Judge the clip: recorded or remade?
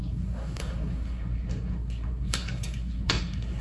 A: remade